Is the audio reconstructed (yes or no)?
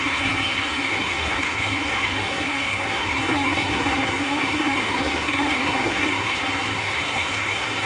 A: yes